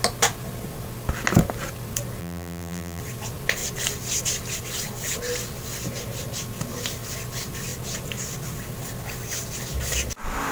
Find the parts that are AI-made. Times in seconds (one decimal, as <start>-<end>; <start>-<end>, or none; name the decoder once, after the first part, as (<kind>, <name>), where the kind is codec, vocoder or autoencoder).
2.2-3.0 (vocoder, BigVGAN v2)